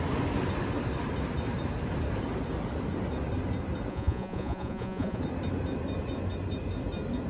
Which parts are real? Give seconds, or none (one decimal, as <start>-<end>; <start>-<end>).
0.0-3.9; 5.2-7.3